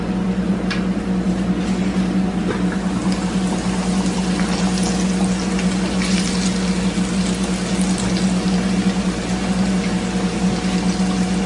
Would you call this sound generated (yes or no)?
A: no